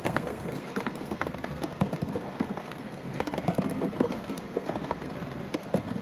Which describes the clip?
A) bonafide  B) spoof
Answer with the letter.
B